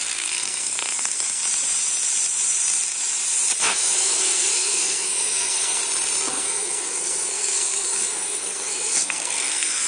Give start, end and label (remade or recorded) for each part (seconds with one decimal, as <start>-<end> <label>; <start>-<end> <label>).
0.0-1.4 remade; 1.4-3.6 recorded; 3.6-5.8 remade; 5.8-6.3 recorded; 6.3-9.9 remade